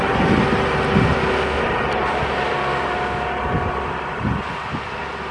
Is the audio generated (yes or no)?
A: no